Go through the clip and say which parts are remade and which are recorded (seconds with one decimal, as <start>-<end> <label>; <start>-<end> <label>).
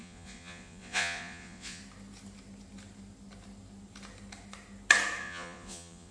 0.0-1.8 remade; 1.8-5.2 recorded; 5.2-6.1 remade